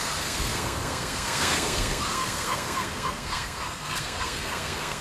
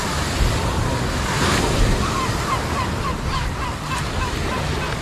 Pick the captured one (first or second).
second